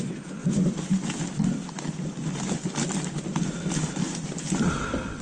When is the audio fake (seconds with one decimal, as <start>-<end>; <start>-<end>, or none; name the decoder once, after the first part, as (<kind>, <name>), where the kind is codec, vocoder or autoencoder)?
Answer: none